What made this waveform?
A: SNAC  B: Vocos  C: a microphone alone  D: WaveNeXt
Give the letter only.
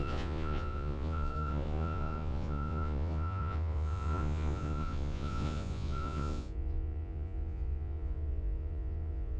B